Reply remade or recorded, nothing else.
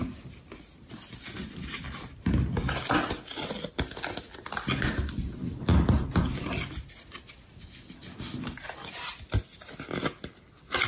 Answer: recorded